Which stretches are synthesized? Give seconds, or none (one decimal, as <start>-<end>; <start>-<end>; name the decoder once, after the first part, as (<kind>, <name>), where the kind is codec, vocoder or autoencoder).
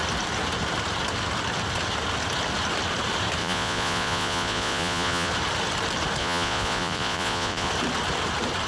3.4-5.3 (vocoder, Vocos); 6.2-7.7